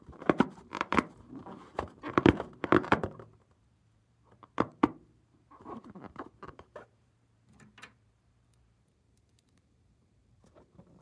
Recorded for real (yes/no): no